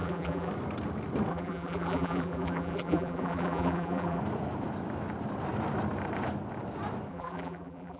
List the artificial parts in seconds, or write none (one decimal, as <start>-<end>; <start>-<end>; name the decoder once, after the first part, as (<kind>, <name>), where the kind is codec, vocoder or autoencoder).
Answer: 0.0-0.5 (vocoder, BigVGAN v2); 1.3-4.2; 7.1-8.0